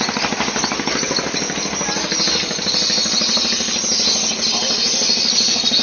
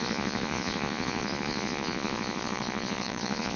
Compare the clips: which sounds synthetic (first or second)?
second